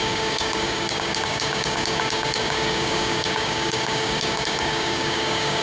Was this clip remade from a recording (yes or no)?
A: yes